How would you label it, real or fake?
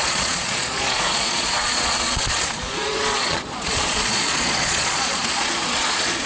fake